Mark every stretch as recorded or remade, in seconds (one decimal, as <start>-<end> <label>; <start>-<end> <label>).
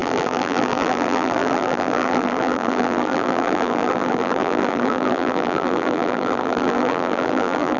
0.0-7.8 remade